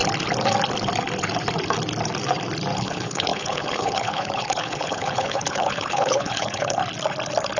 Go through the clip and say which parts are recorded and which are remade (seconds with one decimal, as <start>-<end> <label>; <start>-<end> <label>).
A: 0.0-2.8 recorded; 2.8-6.8 remade; 6.8-7.6 recorded